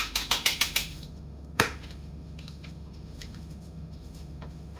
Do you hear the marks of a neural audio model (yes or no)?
yes